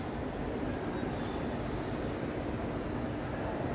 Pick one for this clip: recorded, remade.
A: recorded